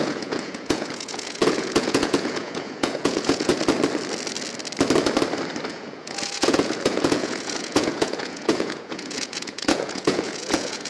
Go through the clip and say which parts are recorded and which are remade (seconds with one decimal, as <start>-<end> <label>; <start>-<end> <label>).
0.0-3.5 remade; 3.5-5.7 recorded; 5.7-10.9 remade

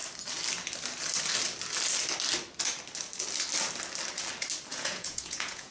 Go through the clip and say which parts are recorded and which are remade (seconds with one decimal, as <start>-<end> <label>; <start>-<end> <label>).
0.0-4.7 recorded; 4.7-5.7 remade